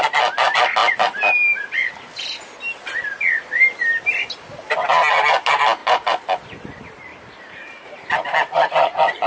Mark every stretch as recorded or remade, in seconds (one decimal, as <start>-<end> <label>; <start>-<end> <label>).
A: 0.0-5.8 recorded; 5.8-6.4 remade; 6.4-7.1 recorded; 7.1-9.3 remade